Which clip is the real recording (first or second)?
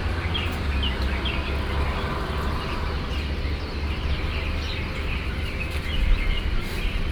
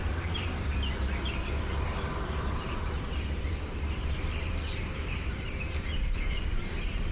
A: first